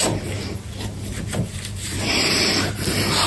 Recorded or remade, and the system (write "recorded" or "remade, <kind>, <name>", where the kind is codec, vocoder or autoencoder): remade, vocoder, BigVGAN v2